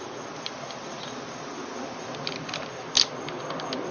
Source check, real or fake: real